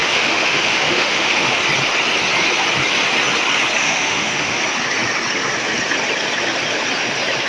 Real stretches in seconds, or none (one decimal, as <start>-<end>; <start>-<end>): 1.6-3.8; 4.6-7.5